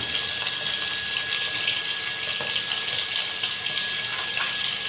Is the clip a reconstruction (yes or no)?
no